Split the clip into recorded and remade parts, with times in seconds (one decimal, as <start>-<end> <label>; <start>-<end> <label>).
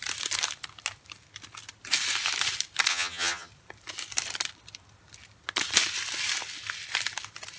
0.0-2.9 recorded; 2.9-3.5 remade; 3.5-7.6 recorded